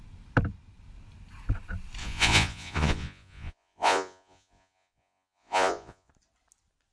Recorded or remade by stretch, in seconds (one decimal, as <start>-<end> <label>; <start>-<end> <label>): 0.0-2.0 recorded; 2.0-6.1 remade; 6.1-6.9 recorded